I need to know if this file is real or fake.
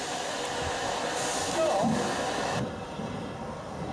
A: real